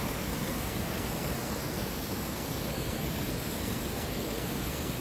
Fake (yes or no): yes